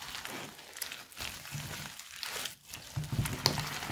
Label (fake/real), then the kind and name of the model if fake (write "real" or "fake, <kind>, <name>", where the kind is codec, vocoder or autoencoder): real